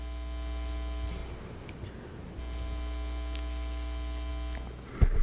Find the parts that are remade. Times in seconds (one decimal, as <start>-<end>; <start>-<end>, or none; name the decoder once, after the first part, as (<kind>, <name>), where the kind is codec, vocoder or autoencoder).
none